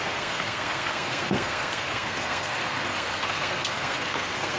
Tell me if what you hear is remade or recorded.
remade